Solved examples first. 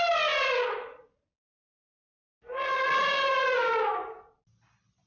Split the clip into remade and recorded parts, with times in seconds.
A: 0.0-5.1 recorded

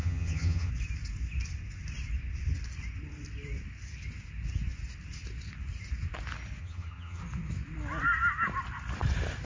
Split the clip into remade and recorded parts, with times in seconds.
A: 0.0-0.7 remade; 0.7-6.6 recorded; 6.6-7.2 remade; 7.2-9.4 recorded

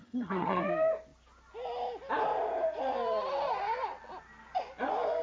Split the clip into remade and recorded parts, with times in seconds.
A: 0.0-0.6 remade; 0.6-5.2 recorded

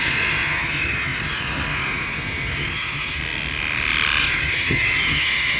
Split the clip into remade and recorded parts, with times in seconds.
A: 0.0-3.2 remade; 3.2-4.2 recorded; 4.2-5.6 remade

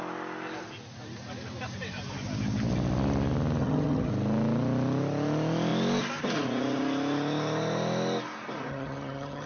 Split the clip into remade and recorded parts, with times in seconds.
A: 0.0-3.6 recorded; 3.6-4.1 remade; 4.1-8.7 recorded; 8.7-9.5 remade

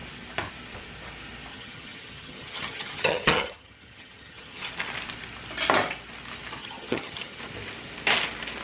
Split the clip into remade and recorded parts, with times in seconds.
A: 0.0-1.5 recorded; 1.5-4.7 remade; 4.7-6.6 recorded; 6.6-7.4 remade; 7.4-8.6 recorded

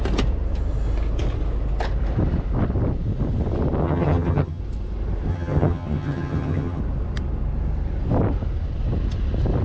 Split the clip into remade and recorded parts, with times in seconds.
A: 0.0-3.8 recorded; 3.8-4.6 remade; 4.6-5.3 recorded; 5.3-6.8 remade; 6.8-9.6 recorded

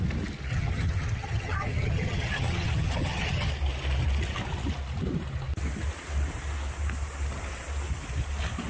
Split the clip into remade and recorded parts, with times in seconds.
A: 0.0-0.5 recorded; 0.5-3.5 remade; 3.5-8.7 recorded